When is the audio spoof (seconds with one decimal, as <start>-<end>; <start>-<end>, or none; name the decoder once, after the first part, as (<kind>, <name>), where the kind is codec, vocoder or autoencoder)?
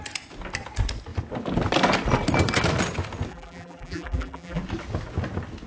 3.3-4.6 (vocoder, BigVGAN v2)